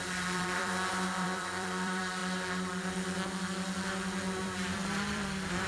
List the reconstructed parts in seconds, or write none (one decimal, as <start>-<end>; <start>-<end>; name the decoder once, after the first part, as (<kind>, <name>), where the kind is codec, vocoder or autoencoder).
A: 0.0-2.2 (vocoder, BigVGAN v2); 4.4-5.7